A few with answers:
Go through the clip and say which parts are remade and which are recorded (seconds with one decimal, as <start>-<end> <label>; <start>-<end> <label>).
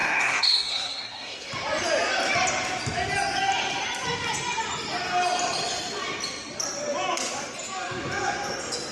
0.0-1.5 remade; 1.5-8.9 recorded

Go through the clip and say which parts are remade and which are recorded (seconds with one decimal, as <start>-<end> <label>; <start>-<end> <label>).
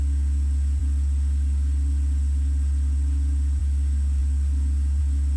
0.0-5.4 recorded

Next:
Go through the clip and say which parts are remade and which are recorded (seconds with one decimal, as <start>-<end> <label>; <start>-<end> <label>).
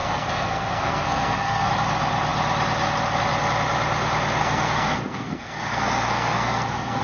0.0-1.7 remade; 1.7-4.4 recorded; 4.4-7.0 remade